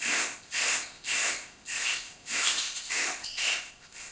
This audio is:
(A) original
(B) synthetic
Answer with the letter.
B